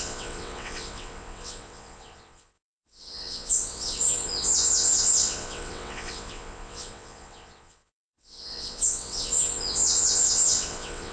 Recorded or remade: remade